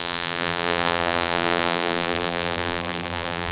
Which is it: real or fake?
fake